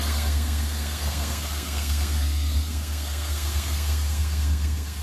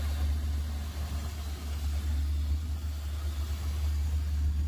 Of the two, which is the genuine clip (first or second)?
second